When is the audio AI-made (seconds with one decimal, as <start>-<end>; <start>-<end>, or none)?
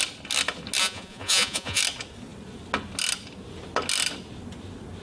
0.8-1.8